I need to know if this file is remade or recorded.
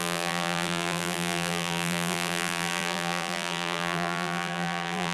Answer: remade